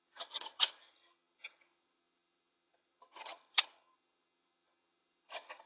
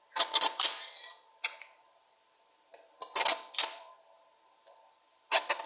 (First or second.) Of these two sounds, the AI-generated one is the first